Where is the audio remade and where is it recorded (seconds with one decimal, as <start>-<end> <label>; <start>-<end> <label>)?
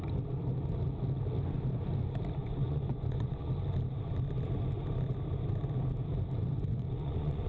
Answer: 0.0-2.4 recorded; 2.4-3.5 remade; 3.5-6.7 recorded; 6.7-7.5 remade